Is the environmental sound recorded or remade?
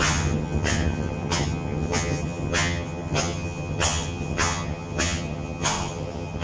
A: remade